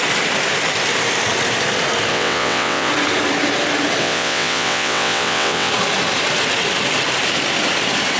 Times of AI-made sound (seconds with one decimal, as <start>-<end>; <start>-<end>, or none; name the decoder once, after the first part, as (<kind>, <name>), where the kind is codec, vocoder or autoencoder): 2.1-2.9 (vocoder, WaveNeXt); 4.0-5.7